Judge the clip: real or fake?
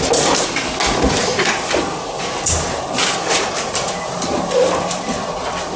real